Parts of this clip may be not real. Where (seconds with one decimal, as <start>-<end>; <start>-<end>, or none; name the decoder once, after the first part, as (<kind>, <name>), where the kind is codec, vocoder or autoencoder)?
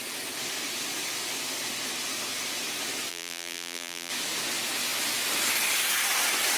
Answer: 3.1-4.1 (vocoder, BigVGAN v2)